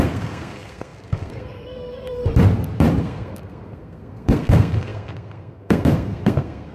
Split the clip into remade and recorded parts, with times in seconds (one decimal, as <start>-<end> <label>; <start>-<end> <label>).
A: 0.0-2.2 remade; 2.2-3.0 recorded; 3.0-6.7 remade